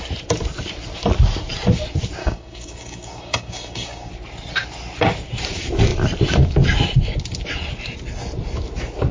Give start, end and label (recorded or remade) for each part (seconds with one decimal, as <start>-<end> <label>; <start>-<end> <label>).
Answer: 0.0-2.2 recorded; 2.2-4.1 remade; 4.1-9.1 recorded